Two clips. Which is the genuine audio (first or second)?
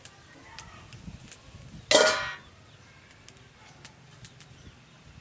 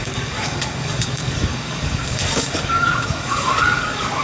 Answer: first